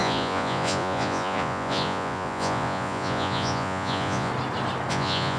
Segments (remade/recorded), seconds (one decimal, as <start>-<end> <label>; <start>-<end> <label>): 0.0-4.3 remade; 4.3-4.9 recorded; 4.9-5.4 remade